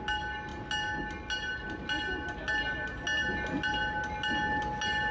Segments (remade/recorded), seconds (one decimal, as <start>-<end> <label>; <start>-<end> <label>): 0.0-5.1 recorded